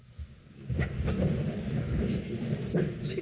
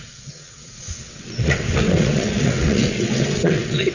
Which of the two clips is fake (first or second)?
second